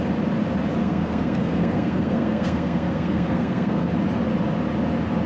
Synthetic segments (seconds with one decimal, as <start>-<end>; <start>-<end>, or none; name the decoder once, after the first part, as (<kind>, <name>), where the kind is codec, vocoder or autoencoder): 0.8-3.9 (codec, SNAC)